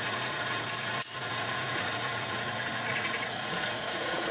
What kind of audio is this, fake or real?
fake